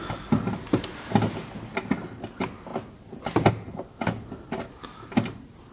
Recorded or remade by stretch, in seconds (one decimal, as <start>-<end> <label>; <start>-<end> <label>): 0.0-5.7 recorded